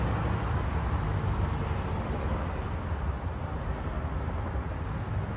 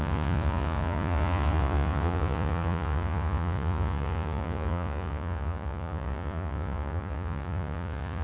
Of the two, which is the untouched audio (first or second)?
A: first